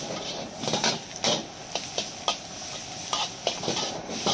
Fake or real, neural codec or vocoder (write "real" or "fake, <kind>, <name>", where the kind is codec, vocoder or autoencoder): real